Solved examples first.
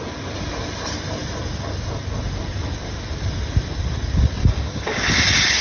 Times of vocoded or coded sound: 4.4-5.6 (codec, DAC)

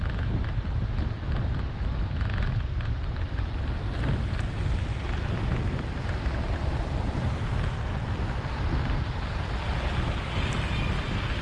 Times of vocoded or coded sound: none

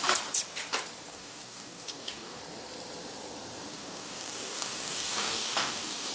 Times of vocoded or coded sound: 1.1-2.4 (codec, DAC); 3.7-6.1

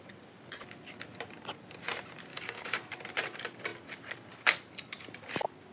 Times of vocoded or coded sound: 2.3-2.8 (codec, DAC)